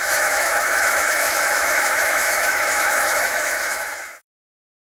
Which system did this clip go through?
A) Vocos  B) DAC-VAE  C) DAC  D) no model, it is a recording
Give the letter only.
B